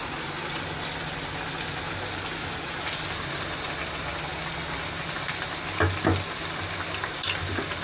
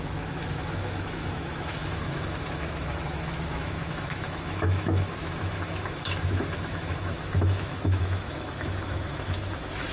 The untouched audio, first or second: first